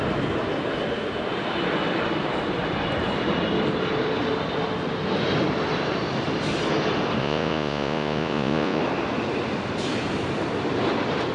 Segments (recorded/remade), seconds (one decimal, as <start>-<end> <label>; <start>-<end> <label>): 0.0-7.2 recorded; 7.2-8.8 remade; 8.8-11.3 recorded